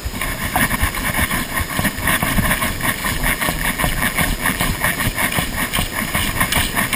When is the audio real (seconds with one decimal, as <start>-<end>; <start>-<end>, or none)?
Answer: 0.0-3.0; 5.1-7.0